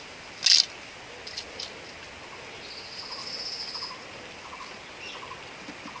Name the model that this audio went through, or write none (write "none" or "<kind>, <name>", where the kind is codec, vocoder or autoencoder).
none